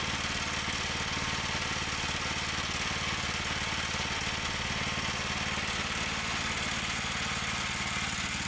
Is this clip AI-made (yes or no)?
no